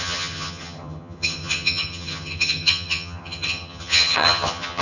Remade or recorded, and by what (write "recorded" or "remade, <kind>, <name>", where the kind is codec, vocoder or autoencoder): remade, vocoder, HiFi-GAN